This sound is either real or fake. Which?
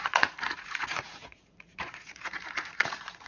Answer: fake